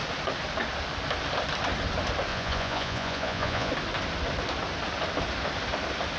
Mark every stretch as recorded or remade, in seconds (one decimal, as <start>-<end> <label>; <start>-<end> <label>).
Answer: 0.0-2.3 recorded; 2.3-3.7 remade; 3.7-6.2 recorded